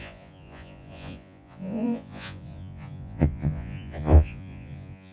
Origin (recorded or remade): remade